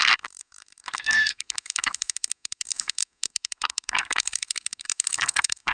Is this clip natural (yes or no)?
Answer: no